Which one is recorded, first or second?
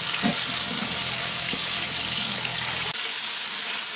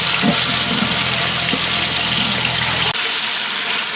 second